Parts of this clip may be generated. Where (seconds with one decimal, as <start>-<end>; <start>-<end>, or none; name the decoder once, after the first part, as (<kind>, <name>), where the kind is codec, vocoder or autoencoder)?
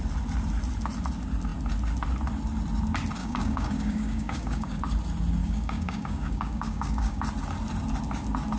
3.2-4.8 (codec, DAC); 5.4-7.2